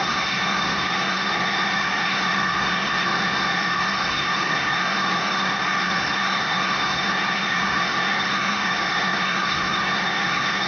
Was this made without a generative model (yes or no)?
no